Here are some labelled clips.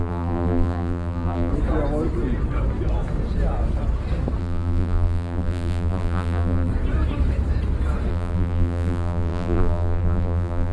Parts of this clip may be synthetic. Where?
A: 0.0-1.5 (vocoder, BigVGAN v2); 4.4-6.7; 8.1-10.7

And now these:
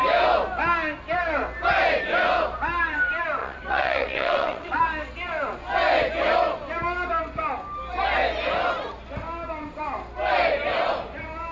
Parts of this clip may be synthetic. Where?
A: 3.4-4.8 (vocoder, WaveNeXt)

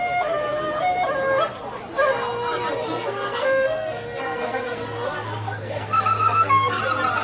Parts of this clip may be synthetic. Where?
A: 2.8-6.8 (codec, SNAC)

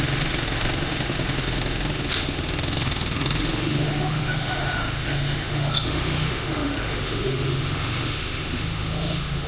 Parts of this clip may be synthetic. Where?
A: 0.0-9.5 (autoencoder, DAC-VAE)

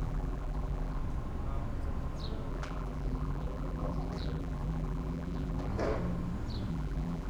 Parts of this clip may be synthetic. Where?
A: 0.0-1.0 (vocoder, BigVGAN v2); 2.5-5.7; 6.7-7.3

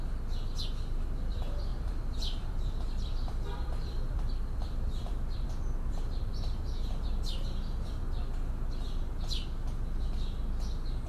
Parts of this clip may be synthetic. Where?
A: 1.7-5.5 (vocoder, BigVGAN v2)

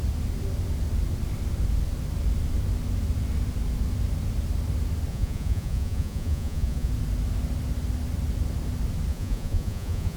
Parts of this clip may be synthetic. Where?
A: 5.1-6.9 (vocoder, Vocos); 9.1-10.2

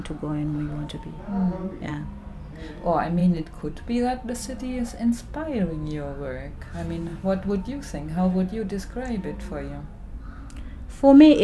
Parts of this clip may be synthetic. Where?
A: none